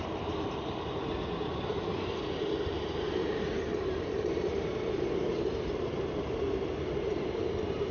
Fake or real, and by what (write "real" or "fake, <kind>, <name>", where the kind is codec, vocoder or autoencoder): fake, vocoder, BigVGAN v2